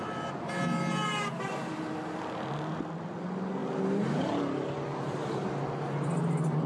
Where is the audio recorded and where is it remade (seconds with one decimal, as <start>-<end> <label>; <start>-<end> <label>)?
0.0-6.7 recorded